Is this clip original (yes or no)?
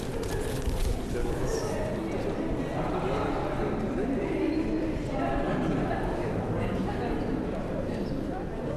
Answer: yes